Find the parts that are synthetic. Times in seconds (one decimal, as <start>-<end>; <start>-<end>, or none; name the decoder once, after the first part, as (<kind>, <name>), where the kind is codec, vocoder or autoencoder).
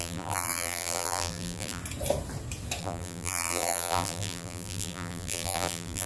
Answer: 0.0-1.8 (vocoder, BigVGAN v2); 2.8-6.1